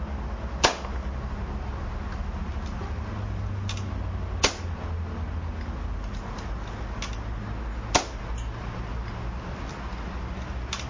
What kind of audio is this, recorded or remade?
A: recorded